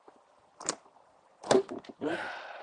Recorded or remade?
recorded